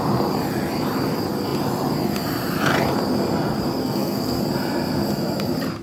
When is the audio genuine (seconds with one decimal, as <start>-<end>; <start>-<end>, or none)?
0.0-3.8; 4.4-5.8